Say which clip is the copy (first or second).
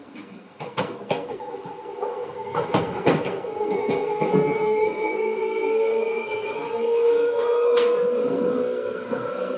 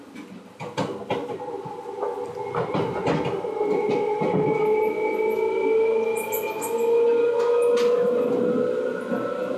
first